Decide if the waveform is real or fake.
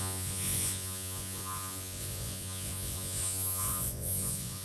fake